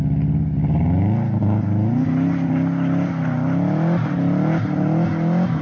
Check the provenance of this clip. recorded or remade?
recorded